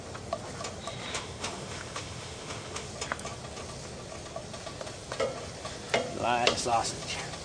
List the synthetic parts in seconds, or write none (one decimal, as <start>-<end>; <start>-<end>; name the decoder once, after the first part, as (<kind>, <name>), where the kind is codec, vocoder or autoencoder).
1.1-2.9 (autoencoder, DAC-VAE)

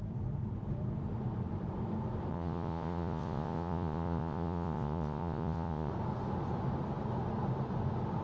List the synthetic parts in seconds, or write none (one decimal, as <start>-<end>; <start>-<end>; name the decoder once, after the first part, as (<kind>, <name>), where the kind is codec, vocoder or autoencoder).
2.3-5.9 (vocoder, Vocos)

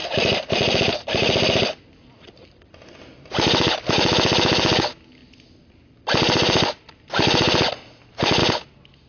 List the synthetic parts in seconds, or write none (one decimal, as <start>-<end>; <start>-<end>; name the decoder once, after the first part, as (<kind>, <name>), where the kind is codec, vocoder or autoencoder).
none

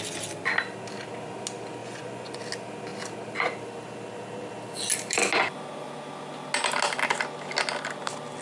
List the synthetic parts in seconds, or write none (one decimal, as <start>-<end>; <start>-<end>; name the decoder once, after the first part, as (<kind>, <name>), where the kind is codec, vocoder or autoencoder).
1.8-2.4 (vocoder, Vocos)

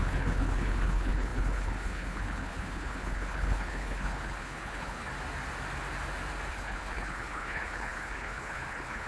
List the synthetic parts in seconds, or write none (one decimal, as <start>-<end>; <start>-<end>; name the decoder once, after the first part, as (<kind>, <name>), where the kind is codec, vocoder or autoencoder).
0.0-5.1 (codec, HILCodec); 6.5-9.1

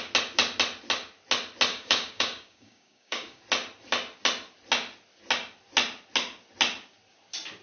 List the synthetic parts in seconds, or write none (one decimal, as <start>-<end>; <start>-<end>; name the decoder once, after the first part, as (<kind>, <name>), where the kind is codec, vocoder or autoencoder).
1.7-3.4 (codec, DAC)

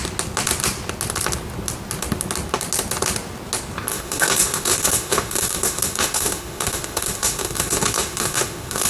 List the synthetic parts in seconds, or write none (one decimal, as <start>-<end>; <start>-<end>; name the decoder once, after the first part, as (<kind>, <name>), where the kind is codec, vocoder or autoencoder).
3.9-8.9 (autoencoder, DAC-VAE)